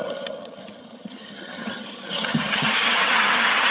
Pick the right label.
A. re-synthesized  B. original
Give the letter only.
A